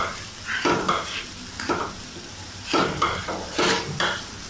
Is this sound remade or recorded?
recorded